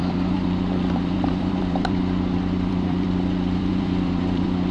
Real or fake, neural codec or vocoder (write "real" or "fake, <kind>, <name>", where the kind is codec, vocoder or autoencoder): fake, vocoder, BigVGAN v2